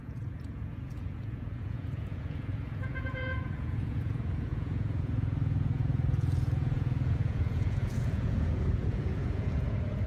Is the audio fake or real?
fake